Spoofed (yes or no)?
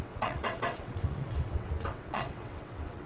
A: yes